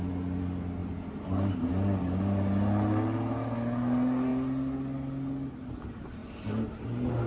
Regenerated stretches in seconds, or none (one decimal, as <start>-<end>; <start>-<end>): none